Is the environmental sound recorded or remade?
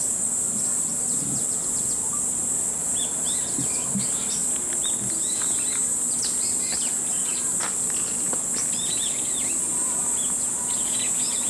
recorded